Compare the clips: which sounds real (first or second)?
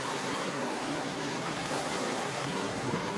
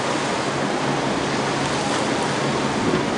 second